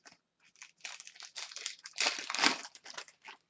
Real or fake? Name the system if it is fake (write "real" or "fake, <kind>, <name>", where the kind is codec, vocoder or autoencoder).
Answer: real